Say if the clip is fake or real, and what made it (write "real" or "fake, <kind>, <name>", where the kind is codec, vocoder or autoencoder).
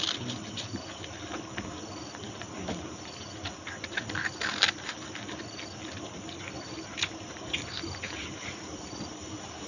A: real